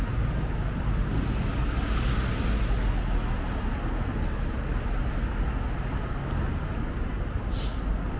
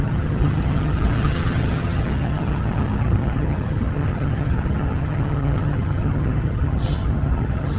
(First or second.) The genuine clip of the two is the first